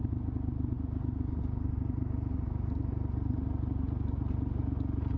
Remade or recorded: recorded